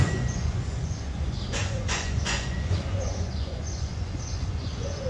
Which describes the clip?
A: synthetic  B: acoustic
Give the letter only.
A